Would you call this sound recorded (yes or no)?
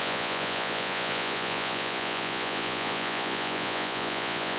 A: no